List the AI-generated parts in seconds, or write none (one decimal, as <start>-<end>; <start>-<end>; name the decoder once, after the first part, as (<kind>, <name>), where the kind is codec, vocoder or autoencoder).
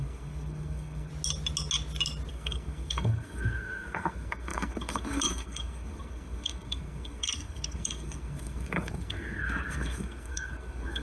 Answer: 0.0-1.1 (codec, SNAC); 2.3-11.0